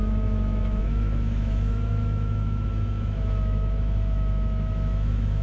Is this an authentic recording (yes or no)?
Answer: no